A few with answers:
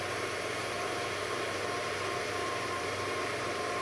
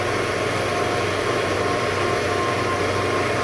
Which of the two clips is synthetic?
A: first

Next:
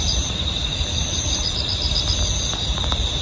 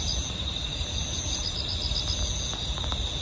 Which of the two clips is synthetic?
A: first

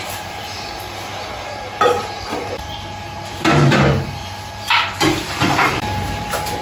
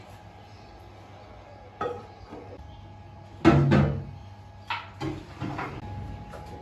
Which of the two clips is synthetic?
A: first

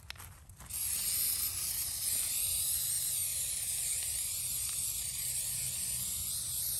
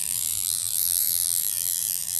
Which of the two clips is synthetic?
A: second